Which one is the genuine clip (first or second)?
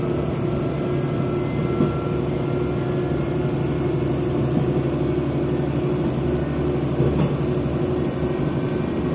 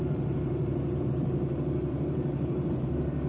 first